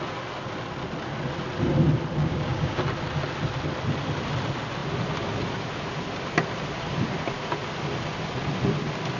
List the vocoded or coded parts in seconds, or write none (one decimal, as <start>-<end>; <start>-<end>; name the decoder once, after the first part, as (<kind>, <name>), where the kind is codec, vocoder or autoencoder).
2.2-2.8 (codec, DAC)